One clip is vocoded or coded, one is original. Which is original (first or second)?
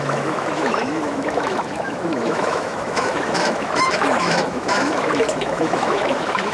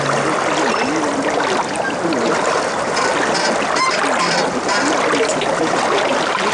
second